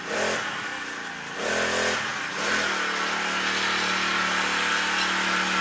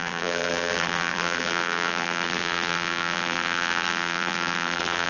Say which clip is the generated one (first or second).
second